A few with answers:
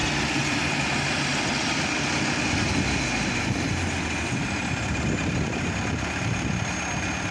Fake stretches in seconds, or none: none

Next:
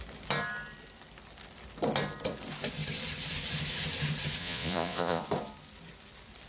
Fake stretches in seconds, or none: 4.4-5.2 (vocoder, Vocos)